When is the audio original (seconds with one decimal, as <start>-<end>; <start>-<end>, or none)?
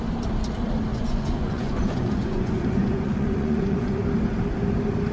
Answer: 0.0-0.9; 4.0-5.1